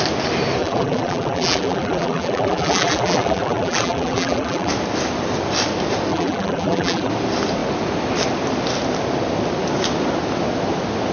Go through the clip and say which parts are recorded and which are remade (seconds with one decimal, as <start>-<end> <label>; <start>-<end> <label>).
0.0-0.6 recorded; 0.6-4.7 remade; 4.7-6.1 recorded; 6.1-7.1 remade; 7.1-11.1 recorded